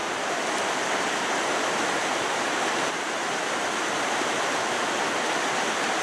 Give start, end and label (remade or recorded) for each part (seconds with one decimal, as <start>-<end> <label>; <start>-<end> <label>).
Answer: 0.0-1.9 recorded; 1.9-3.4 remade; 3.4-4.7 recorded; 4.7-6.0 remade